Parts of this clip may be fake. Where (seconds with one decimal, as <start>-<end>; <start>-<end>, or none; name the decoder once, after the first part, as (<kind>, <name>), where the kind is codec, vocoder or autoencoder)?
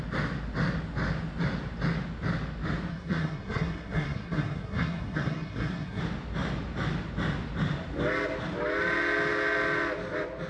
2.9-6.0 (codec, SNAC)